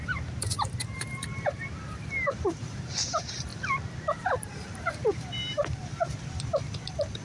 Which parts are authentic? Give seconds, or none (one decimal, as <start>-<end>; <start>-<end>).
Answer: 3.5-4.2